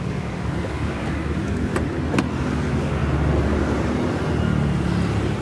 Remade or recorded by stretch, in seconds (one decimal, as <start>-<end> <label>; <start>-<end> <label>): 0.0-1.7 remade; 1.7-2.4 recorded; 2.4-3.0 remade; 3.0-5.4 recorded